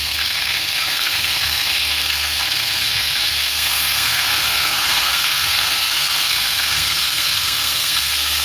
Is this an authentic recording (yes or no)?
no